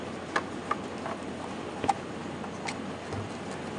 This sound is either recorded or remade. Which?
recorded